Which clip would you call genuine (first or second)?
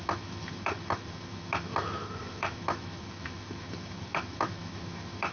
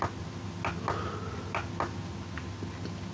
second